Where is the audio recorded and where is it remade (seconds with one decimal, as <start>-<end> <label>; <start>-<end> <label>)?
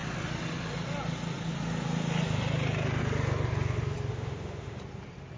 0.0-4.1 recorded; 4.1-4.8 remade; 4.8-5.4 recorded